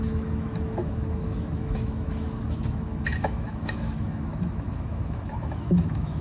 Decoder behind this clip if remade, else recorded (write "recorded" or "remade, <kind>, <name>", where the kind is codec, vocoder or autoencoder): remade, autoencoder, DAC-VAE